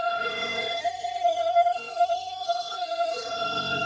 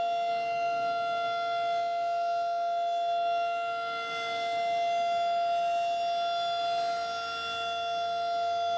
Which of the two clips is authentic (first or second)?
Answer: second